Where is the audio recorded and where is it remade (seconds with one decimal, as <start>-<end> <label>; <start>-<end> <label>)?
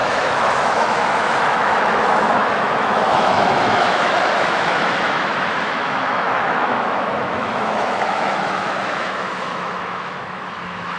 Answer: 0.0-11.0 remade